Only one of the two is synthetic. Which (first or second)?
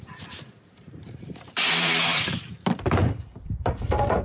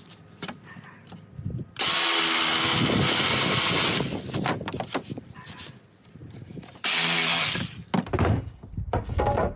first